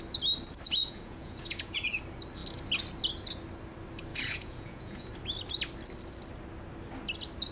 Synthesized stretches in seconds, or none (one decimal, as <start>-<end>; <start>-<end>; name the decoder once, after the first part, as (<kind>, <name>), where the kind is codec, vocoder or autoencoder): 0.8-2.0 (vocoder, Vocos); 4.1-5.1

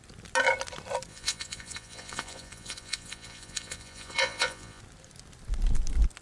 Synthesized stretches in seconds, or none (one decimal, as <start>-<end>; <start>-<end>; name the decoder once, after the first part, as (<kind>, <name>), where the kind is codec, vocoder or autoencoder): 1.1-4.8 (vocoder, Vocos)

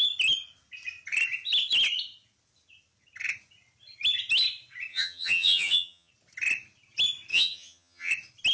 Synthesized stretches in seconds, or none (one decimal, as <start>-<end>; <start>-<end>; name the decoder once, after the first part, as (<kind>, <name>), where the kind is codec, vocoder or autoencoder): 4.9-6.1 (vocoder, HiFi-GAN); 7.3-8.1

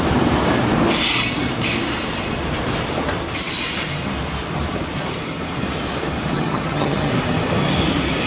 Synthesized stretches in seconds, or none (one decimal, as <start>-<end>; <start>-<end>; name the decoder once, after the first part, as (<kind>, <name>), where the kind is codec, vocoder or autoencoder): 6.3-7.1 (vocoder, HiFi-GAN)

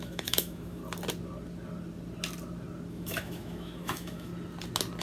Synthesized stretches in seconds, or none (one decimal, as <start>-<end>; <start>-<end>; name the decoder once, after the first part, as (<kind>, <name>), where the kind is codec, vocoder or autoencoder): 0.0-0.8 (autoencoder, DAC-VAE); 2.9-4.3